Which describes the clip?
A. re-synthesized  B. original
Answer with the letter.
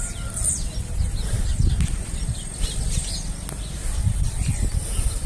B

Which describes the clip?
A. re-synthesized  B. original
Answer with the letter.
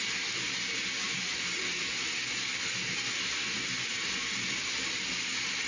B